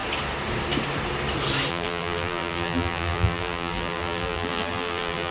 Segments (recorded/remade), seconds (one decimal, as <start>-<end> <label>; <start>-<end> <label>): 0.0-1.7 recorded; 1.7-5.3 remade